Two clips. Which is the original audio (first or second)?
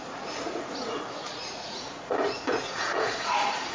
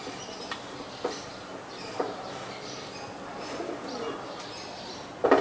second